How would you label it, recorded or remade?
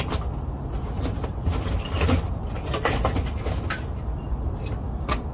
recorded